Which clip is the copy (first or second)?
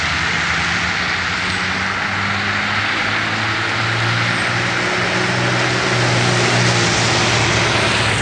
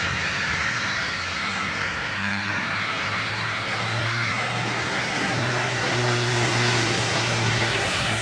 second